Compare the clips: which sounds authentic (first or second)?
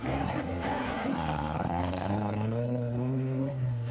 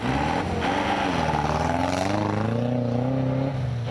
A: second